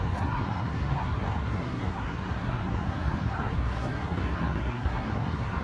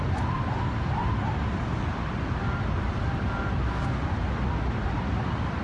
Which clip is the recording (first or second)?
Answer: second